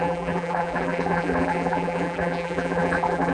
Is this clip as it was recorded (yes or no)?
no